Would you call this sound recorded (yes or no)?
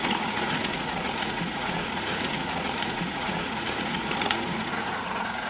no